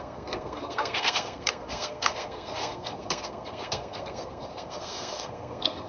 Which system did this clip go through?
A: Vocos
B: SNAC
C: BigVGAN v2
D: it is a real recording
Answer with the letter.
B